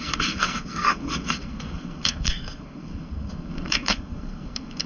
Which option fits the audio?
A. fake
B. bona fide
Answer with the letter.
A